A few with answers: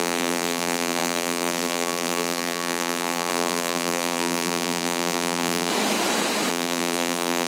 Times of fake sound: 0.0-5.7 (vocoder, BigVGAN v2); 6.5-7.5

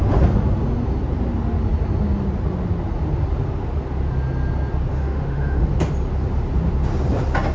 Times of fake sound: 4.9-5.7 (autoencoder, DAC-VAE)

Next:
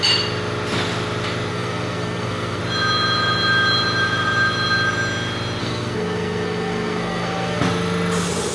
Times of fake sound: 1.5-2.6 (codec, SNAC); 5.6-7.6

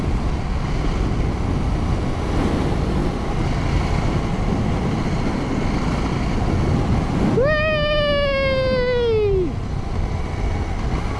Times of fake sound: none